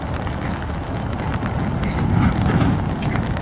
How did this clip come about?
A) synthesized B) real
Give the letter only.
B